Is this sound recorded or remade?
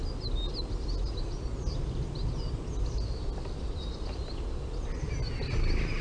recorded